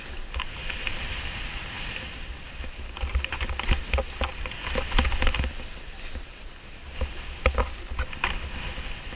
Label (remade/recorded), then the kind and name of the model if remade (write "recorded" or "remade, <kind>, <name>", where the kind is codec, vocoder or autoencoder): recorded